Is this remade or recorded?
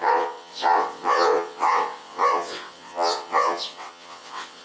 remade